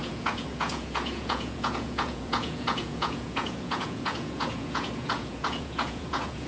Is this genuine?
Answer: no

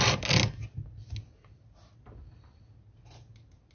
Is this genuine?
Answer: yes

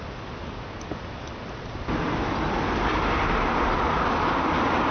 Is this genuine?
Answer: yes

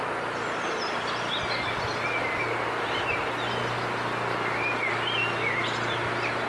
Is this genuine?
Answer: yes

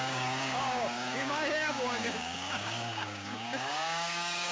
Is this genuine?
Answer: no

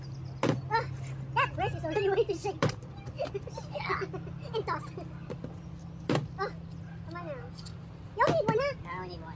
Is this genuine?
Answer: yes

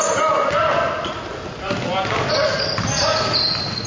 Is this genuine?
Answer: yes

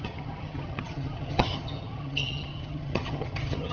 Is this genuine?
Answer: no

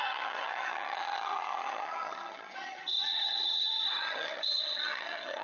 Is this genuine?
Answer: no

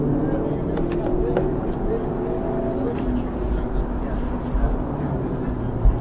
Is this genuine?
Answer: yes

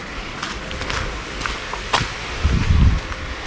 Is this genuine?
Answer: yes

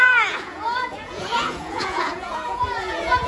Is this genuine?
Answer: no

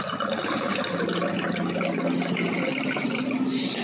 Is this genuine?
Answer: yes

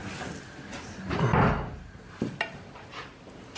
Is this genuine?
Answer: yes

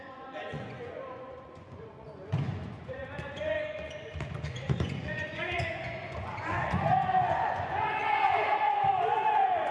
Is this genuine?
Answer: no